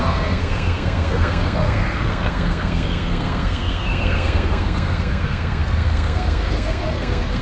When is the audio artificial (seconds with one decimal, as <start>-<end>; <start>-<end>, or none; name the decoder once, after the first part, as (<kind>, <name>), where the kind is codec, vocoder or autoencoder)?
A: 0.0-7.4 (codec, SNAC)